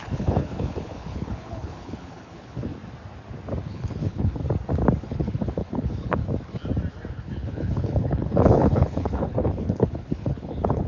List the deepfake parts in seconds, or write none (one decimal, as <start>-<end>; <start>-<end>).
0.0-2.7; 3.6-4.4; 5.0-6.2; 7.1-10.9